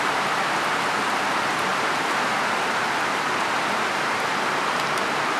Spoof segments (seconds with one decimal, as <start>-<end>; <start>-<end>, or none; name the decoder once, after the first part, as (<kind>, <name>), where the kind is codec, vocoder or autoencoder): none